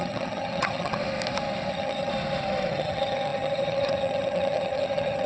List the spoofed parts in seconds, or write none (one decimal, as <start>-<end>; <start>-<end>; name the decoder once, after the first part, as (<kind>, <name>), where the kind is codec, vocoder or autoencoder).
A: 0.0-1.0 (vocoder, HiFi-GAN); 1.7-2.1; 2.7-5.3